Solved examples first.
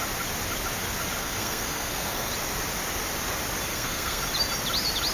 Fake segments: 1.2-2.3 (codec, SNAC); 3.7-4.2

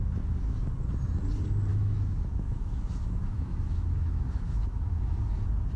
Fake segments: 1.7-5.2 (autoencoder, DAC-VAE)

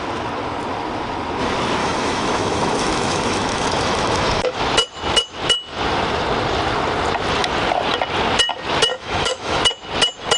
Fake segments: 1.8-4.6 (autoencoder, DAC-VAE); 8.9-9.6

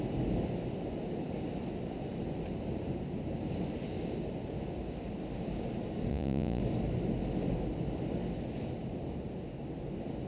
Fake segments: 6.1-6.6 (vocoder, Vocos)

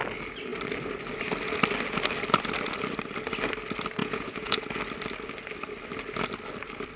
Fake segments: 4.0-4.6 (vocoder, Vocos)

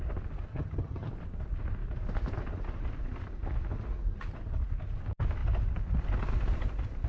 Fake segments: 0.5-1.1 (vocoder, HiFi-GAN)

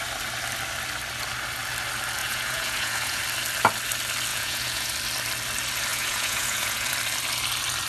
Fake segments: 2.2-3.2 (vocoder, Vocos); 4.3-4.9; 5.9-6.9